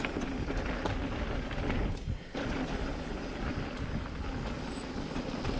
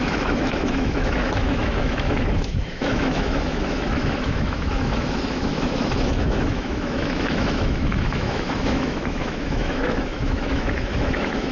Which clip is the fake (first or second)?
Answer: second